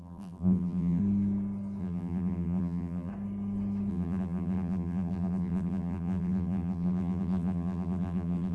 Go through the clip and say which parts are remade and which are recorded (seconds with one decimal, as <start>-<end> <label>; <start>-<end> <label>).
0.0-1.0 remade; 1.0-1.8 recorded; 1.8-3.1 remade; 3.1-3.9 recorded; 3.9-8.5 remade